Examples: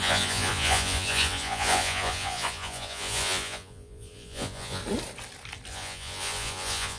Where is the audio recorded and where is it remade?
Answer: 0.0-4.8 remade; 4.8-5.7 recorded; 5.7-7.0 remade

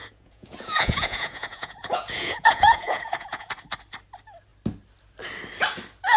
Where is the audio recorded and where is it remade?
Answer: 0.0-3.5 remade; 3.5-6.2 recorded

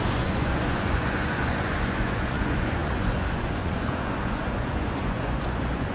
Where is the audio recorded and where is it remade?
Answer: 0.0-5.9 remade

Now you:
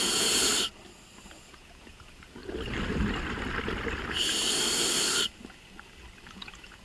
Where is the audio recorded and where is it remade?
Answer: 0.0-0.5 remade; 0.5-1.2 recorded; 1.2-2.4 remade; 2.4-6.3 recorded; 6.3-6.8 remade

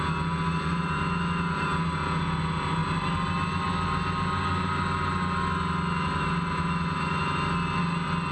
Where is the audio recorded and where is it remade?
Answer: 0.0-8.3 recorded

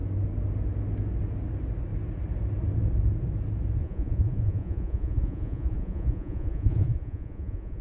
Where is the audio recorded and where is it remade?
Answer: 0.0-3.8 recorded; 3.8-7.8 remade